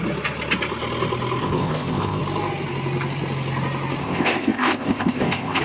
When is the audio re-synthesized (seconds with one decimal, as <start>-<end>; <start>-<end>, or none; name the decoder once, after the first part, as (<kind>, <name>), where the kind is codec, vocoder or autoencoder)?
1.4-2.2 (codec, ZipCodec); 4.0-5.6